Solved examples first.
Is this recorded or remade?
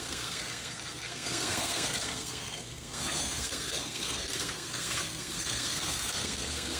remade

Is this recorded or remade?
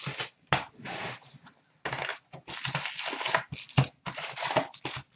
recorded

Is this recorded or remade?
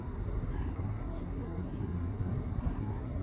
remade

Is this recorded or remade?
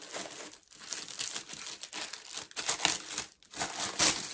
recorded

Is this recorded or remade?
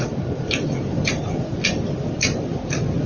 recorded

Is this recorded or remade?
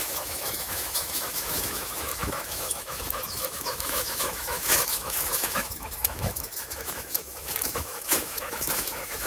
remade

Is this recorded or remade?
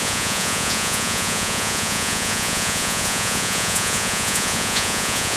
remade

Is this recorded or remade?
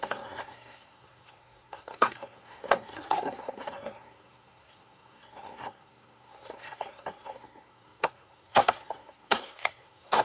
remade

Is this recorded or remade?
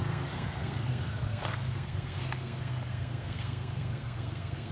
remade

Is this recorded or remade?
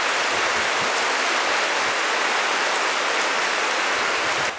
recorded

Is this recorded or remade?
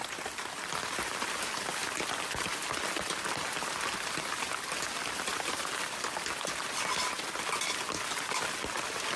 recorded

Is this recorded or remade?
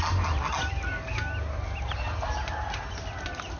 recorded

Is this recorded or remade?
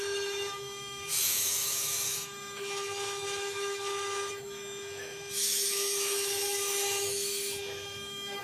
remade